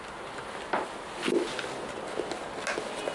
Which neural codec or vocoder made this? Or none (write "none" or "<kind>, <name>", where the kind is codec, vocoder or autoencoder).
none